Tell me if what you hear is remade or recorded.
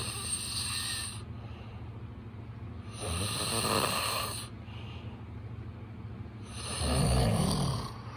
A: recorded